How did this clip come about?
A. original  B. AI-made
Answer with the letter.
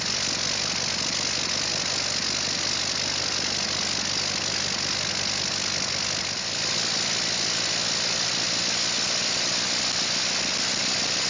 A